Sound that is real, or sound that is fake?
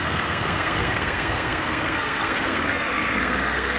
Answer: fake